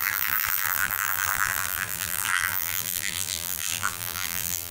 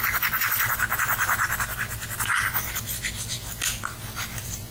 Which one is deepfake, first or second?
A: first